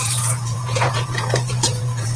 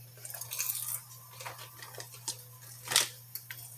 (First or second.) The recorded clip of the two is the second